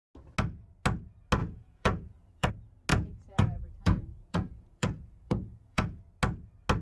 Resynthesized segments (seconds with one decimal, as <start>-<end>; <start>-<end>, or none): 1.4-2.5; 2.9-6.0